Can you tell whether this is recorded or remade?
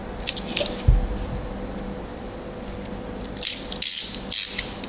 recorded